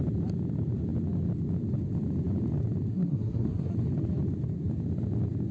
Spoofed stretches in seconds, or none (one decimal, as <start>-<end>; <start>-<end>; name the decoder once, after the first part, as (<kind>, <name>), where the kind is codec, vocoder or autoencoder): 2.9-3.7 (codec, SNAC)

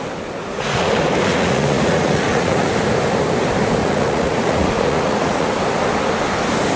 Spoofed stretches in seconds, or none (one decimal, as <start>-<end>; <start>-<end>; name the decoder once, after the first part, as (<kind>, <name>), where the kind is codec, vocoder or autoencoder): 0.4-0.9 (vocoder, Vocos); 1.3-2.7; 3.8-5.5

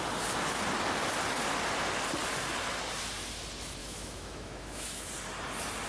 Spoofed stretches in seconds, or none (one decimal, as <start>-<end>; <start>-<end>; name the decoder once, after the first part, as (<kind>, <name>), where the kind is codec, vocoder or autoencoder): 3.8-5.1 (autoencoder, DAC-VAE)

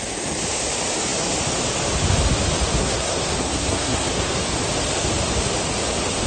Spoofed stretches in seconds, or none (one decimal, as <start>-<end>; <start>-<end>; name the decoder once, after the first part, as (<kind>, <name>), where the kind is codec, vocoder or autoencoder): 2.8-4.4 (codec, SNAC)

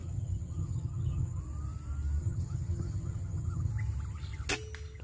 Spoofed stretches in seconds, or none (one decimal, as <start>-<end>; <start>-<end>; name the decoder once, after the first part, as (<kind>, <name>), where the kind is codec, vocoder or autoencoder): 0.0-1.4 (vocoder, HiFi-GAN); 2.2-3.7

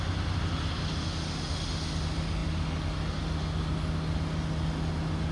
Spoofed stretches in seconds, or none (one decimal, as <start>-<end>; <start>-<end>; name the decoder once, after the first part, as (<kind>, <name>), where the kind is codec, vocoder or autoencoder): none